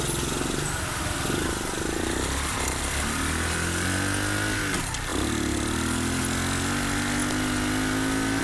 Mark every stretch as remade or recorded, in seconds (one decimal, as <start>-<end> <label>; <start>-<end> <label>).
0.0-8.4 recorded